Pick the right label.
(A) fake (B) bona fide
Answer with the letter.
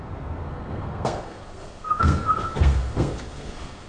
A